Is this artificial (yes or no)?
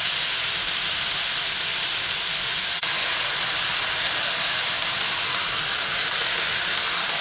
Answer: no